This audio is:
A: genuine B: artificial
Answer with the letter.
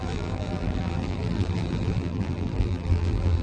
B